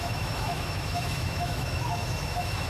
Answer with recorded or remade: remade